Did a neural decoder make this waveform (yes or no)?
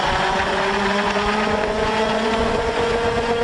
yes